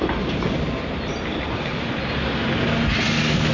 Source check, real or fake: real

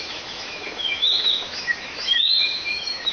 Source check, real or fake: fake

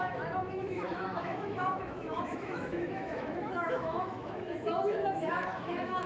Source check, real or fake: fake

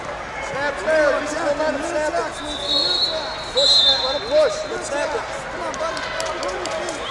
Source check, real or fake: real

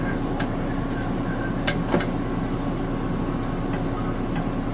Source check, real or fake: real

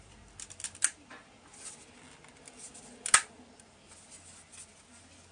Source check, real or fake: real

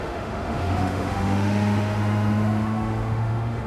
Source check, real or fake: fake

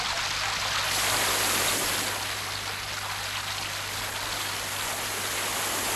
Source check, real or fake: real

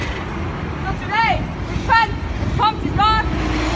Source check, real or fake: real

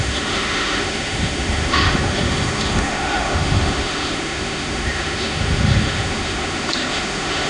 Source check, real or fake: fake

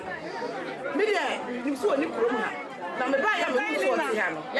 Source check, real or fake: real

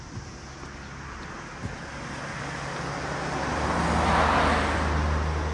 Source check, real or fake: real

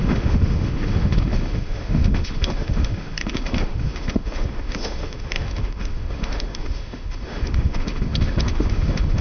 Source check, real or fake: fake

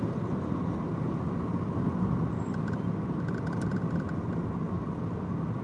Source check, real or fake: real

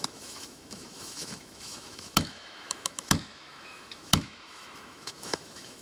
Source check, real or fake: fake